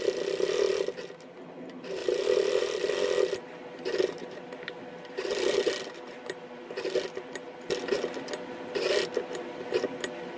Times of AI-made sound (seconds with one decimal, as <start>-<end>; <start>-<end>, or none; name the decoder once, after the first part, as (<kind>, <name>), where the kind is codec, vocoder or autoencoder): 2.0-2.9 (vocoder, BigVGAN v2)